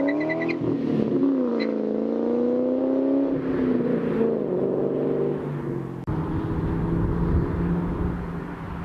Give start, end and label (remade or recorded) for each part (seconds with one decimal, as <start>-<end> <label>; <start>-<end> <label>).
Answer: 0.0-1.5 recorded; 1.5-2.8 remade; 2.8-8.8 recorded